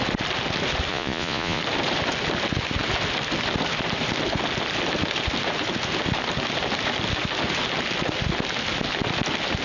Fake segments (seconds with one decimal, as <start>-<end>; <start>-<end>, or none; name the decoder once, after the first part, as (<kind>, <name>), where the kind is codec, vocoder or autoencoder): 0.9-1.6 (vocoder, Vocos)